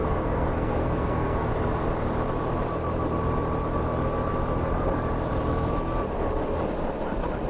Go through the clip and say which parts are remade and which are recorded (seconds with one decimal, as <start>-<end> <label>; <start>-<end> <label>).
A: 0.0-1.5 remade; 1.5-7.5 recorded